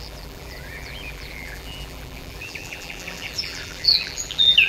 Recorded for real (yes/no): no